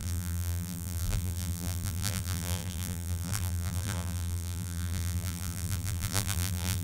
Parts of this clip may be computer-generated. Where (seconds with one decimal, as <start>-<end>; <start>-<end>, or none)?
0.0-6.8